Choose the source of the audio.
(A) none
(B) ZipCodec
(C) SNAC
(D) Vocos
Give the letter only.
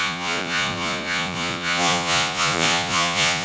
D